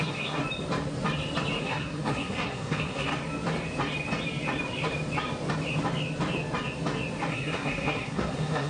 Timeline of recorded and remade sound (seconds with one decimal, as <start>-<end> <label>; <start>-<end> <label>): 0.0-0.4 remade; 0.4-1.6 recorded; 1.6-3.1 remade; 3.1-7.3 recorded; 7.3-8.7 remade